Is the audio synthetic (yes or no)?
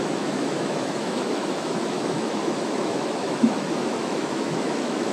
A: yes